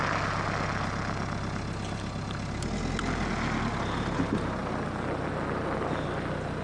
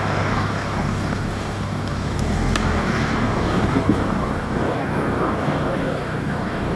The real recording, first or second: first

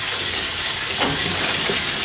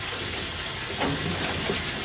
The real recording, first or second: second